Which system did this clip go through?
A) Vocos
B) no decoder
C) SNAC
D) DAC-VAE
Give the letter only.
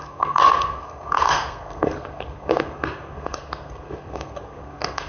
C